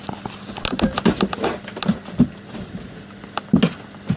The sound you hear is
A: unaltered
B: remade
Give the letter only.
A